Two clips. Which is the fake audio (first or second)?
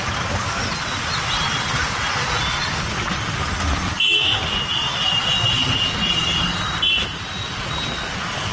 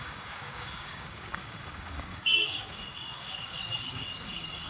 second